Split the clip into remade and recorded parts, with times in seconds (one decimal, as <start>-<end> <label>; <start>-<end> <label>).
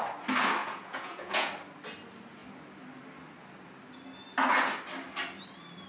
0.0-0.6 recorded; 0.6-1.5 remade; 1.5-5.9 recorded